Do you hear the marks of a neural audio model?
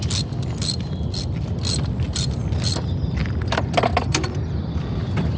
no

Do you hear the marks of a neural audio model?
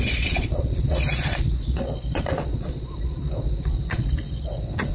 yes